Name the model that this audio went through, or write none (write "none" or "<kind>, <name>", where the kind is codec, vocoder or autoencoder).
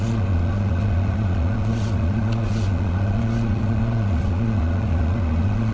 vocoder, Vocos